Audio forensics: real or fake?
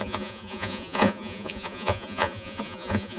fake